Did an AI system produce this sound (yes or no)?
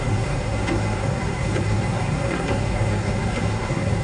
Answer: yes